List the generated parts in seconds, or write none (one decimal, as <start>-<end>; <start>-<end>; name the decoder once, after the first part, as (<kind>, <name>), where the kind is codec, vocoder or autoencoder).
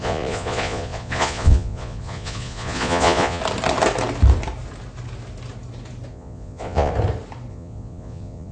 0.0-3.4 (vocoder, Vocos); 6.1-6.9; 7.5-8.5